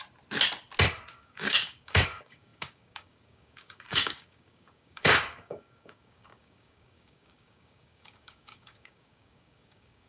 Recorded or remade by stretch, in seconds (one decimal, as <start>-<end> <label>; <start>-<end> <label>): 0.0-1.1 recorded; 1.1-10.1 remade